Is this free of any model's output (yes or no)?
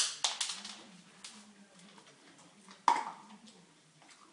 yes